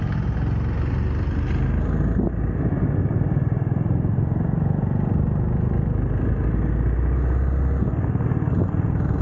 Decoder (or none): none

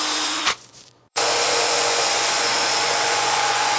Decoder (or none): vocoder, Vocos